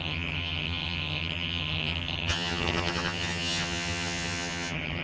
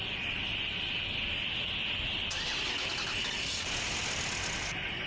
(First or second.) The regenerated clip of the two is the first